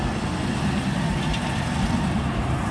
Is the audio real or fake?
real